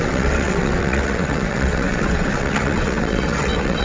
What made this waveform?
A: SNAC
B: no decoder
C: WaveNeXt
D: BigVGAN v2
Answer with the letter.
C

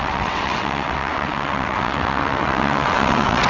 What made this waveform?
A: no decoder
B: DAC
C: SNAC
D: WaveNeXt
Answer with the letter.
D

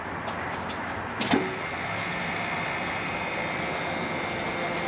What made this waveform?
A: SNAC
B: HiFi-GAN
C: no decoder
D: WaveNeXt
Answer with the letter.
C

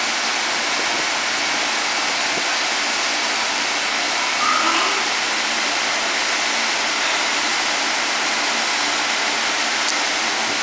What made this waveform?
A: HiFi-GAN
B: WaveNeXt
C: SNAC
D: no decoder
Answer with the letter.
D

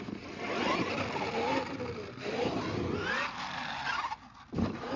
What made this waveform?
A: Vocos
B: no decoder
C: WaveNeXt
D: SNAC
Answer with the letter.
B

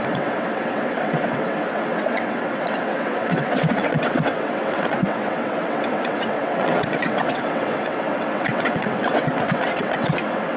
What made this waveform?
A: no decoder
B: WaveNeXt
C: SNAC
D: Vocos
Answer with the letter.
B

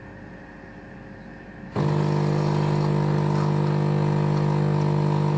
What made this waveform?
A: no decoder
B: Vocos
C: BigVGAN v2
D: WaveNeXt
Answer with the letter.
A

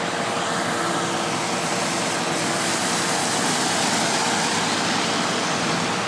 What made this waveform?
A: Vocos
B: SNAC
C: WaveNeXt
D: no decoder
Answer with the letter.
D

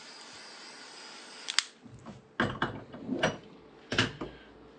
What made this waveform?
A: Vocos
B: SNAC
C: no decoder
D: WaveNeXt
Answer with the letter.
C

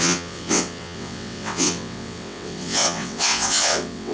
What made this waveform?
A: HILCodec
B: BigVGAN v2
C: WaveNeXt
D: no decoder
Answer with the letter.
C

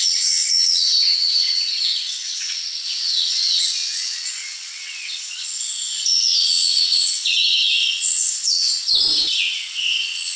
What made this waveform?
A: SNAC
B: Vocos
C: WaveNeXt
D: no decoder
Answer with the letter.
C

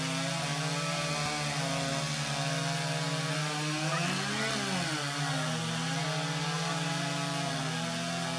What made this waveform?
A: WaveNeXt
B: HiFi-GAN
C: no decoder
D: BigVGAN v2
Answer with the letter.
C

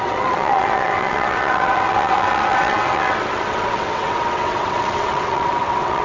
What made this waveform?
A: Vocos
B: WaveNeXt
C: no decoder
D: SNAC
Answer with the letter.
B